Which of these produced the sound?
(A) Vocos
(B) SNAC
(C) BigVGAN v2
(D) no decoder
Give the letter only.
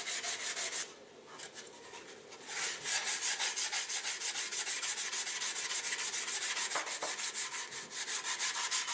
D